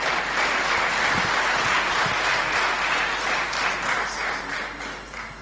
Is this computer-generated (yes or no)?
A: no